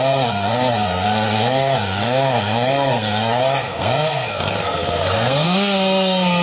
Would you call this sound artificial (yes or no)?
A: yes